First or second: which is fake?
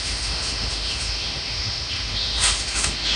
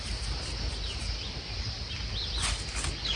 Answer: first